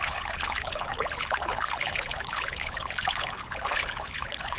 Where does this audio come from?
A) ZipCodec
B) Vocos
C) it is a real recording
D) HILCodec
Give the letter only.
D